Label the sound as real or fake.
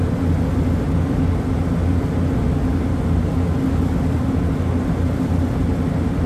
real